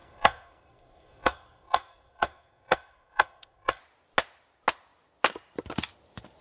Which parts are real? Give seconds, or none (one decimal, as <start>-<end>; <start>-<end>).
3.8-6.4